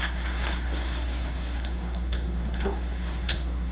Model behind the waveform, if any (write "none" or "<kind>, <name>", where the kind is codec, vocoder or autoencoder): codec, SNAC